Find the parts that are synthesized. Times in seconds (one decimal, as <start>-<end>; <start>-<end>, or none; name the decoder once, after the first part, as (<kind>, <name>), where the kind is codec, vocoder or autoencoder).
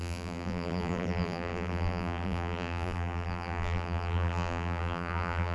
0.0-5.5 (vocoder, BigVGAN v2)